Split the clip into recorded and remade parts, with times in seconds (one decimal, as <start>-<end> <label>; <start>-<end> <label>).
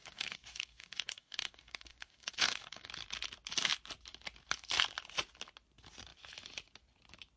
0.0-2.9 remade; 2.9-7.4 recorded